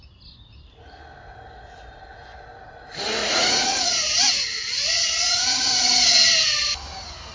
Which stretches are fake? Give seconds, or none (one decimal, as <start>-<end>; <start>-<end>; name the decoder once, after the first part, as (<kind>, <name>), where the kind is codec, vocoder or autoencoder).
3.2-5.7 (vocoder, Vocos)